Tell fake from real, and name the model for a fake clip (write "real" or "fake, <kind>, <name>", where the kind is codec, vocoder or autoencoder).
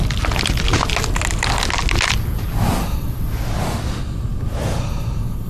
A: real